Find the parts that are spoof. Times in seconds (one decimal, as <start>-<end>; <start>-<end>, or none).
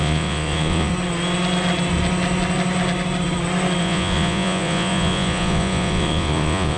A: 0.0-0.9; 3.8-6.8